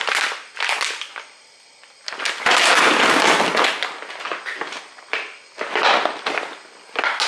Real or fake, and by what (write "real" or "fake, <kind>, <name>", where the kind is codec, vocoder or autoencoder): real